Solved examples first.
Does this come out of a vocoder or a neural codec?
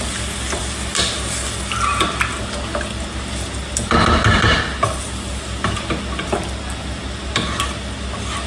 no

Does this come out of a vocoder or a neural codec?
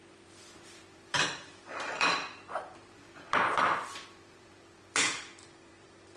yes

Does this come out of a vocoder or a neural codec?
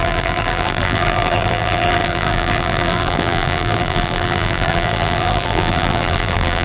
yes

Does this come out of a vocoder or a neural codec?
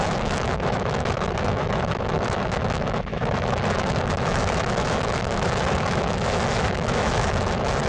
yes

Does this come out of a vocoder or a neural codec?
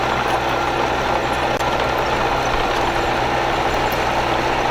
no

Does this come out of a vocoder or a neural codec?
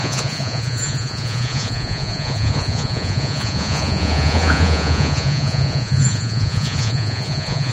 yes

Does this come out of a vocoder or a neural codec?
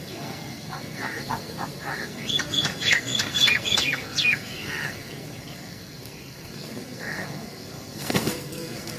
yes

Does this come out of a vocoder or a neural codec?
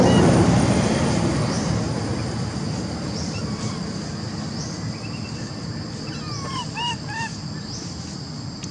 no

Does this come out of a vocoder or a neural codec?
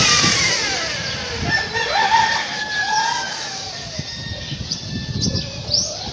no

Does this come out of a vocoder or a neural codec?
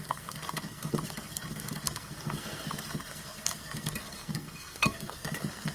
yes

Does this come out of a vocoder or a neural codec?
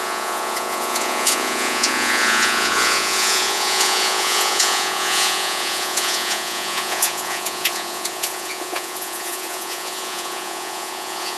yes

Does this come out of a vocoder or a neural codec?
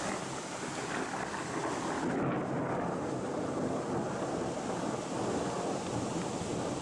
no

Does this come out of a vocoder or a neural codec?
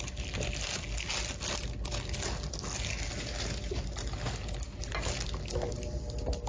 no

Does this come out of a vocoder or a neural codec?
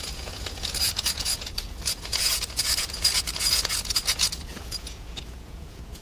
yes